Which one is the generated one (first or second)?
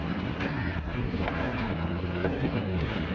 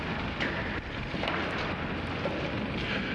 first